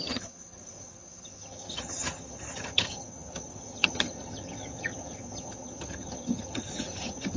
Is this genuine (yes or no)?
no